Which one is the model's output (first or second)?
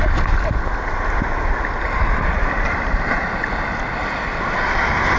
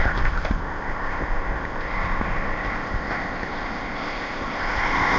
second